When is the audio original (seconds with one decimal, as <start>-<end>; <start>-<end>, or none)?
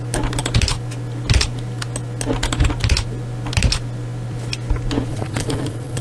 0.0-5.1